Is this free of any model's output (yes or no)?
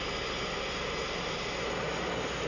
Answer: yes